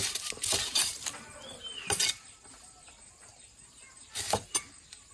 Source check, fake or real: real